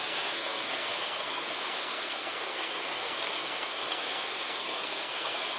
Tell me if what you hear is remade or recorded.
remade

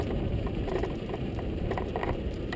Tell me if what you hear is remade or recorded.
remade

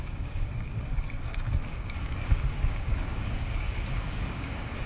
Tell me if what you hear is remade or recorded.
remade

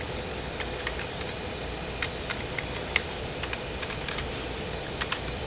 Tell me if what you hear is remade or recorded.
recorded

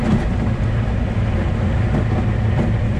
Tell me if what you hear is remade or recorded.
recorded